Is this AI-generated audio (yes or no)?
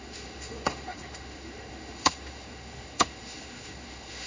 yes